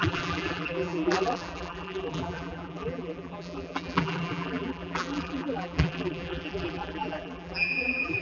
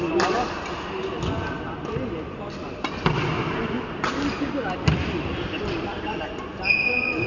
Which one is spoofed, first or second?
first